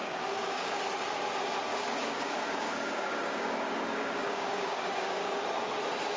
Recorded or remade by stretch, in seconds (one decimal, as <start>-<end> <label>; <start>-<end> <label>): 0.0-0.8 remade; 0.8-1.7 recorded; 1.7-5.4 remade; 5.4-6.2 recorded

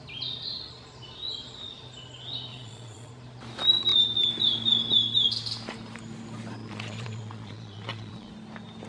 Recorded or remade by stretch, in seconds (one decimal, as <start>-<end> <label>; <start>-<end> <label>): 0.0-2.5 recorded; 2.5-3.1 remade; 3.1-6.6 recorded; 6.6-8.3 remade; 8.3-8.9 recorded

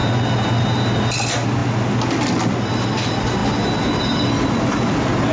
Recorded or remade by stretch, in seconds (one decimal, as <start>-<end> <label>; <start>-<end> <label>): 0.0-5.3 recorded

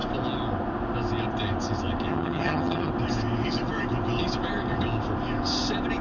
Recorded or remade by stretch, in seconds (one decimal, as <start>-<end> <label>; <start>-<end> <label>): 0.0-2.1 recorded; 2.1-2.9 remade; 2.9-6.0 recorded

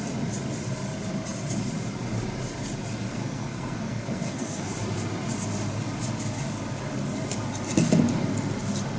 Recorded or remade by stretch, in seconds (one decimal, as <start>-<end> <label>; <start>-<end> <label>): 0.0-3.1 recorded; 3.1-4.7 remade; 4.7-9.0 recorded